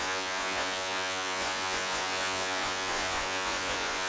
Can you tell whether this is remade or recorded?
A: remade